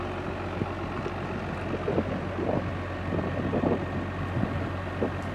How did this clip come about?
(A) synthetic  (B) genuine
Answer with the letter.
B